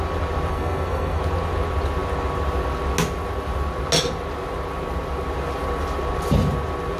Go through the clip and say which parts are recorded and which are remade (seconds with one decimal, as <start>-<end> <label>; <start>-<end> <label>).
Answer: 0.0-0.5 recorded; 0.5-1.2 remade; 1.2-7.0 recorded

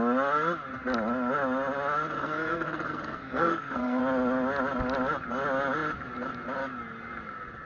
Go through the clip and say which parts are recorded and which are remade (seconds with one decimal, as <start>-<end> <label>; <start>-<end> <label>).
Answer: 0.0-2.2 recorded; 2.2-4.0 remade; 4.0-7.7 recorded

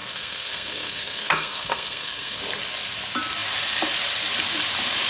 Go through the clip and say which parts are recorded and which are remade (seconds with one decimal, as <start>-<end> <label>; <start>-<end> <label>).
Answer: 0.0-2.4 remade; 2.4-5.1 recorded

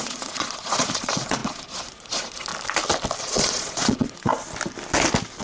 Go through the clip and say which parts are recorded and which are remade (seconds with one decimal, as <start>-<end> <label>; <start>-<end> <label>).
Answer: 0.0-2.5 remade; 2.5-3.2 recorded; 3.2-4.3 remade; 4.3-5.4 recorded

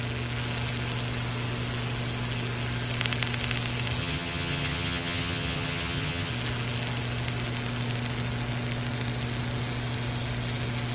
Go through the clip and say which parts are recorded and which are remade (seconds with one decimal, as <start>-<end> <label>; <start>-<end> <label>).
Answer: 0.0-4.0 recorded; 4.0-6.3 remade; 6.3-10.9 recorded

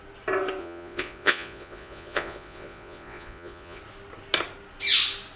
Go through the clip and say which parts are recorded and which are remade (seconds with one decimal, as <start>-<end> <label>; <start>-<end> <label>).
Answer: 0.0-0.6 recorded; 0.6-3.8 remade; 3.8-5.4 recorded

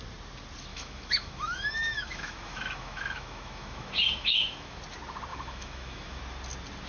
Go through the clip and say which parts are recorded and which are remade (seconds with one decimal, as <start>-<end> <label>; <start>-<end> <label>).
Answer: 0.0-0.7 recorded; 0.7-4.8 remade; 4.8-5.3 recorded; 5.3-6.2 remade; 6.2-6.9 recorded